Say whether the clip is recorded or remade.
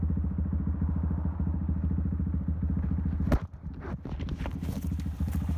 recorded